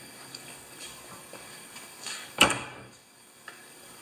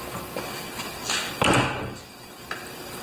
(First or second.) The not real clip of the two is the first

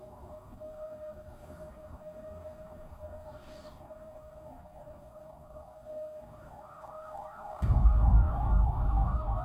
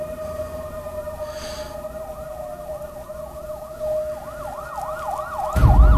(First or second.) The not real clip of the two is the first